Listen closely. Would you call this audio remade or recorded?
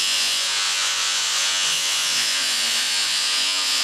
remade